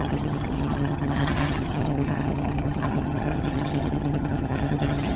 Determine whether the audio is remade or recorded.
remade